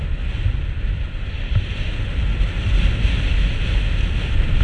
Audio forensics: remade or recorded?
recorded